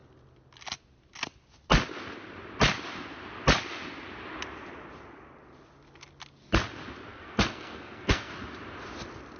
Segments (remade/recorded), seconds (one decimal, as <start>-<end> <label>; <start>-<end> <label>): 0.0-7.1 recorded; 7.1-8.3 remade; 8.3-9.4 recorded